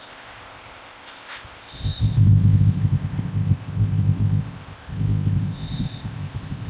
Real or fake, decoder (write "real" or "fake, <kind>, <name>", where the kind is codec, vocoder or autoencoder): fake, codec, ZipCodec